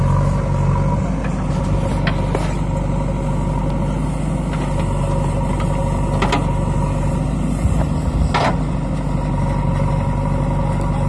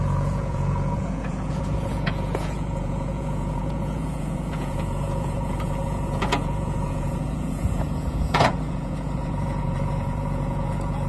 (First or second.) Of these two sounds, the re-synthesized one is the second